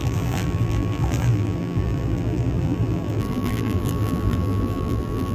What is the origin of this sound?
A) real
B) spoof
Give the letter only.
B